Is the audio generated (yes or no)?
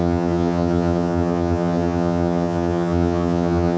yes